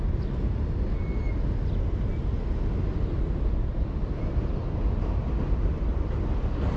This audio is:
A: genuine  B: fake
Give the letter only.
A